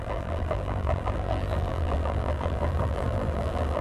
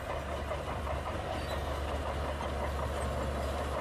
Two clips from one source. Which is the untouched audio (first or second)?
second